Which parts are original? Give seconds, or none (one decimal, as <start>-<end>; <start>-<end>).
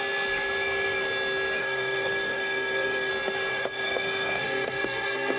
0.0-1.6; 3.1-3.5